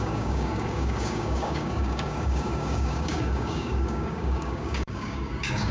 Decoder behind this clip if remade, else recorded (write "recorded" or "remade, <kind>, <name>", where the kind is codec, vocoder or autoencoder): remade, codec, DAC